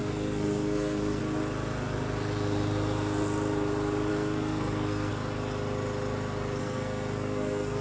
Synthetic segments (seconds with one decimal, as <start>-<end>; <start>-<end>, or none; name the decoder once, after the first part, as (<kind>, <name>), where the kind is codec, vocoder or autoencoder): 0.0-1.2 (codec, SNAC); 4.1-5.1; 6.6-7.8